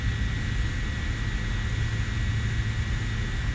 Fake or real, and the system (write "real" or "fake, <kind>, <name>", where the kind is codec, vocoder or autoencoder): real